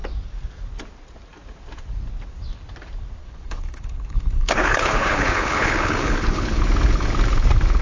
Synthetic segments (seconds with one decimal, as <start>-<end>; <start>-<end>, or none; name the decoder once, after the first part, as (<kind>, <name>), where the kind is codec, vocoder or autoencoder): 3.2-6.6 (codec, HILCodec)